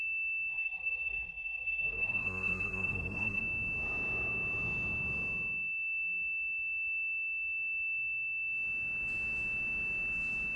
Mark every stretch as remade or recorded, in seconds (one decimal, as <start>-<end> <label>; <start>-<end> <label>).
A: 0.0-0.5 recorded; 0.5-3.4 remade; 3.4-10.6 recorded